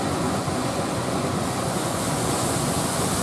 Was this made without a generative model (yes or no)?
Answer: no